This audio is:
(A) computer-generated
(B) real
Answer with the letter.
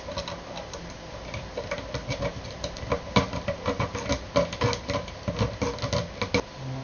B